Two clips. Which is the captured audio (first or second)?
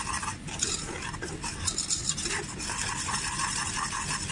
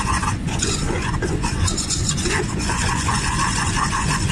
first